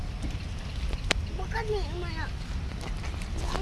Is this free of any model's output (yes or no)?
yes